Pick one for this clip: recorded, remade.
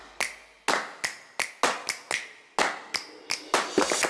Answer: recorded